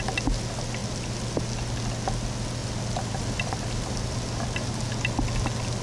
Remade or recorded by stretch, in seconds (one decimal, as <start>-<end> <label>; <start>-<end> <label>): 0.0-0.8 recorded; 0.8-1.5 remade; 1.5-2.6 recorded; 2.6-4.8 remade; 4.8-5.8 recorded